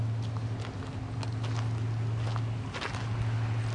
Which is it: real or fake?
real